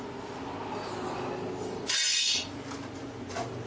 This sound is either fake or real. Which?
real